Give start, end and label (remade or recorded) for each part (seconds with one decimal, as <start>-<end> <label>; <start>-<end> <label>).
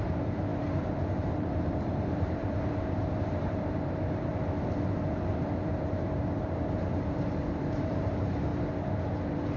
0.0-0.5 remade; 0.5-1.2 recorded; 1.2-4.3 remade; 4.3-5.3 recorded; 5.3-8.5 remade; 8.5-9.6 recorded